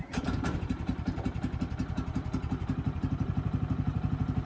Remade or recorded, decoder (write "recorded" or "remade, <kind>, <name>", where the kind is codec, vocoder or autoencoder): remade, vocoder, BigVGAN v2